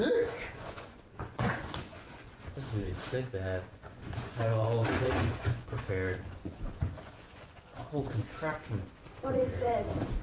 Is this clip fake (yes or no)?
yes